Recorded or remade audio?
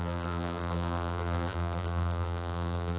remade